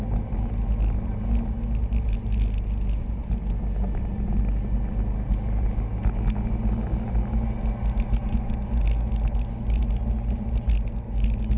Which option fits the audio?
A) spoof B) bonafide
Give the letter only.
B